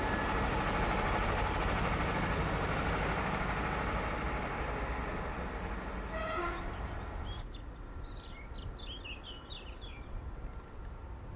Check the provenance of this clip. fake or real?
real